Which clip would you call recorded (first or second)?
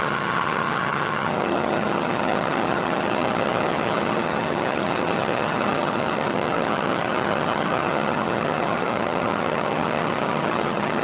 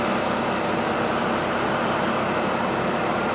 second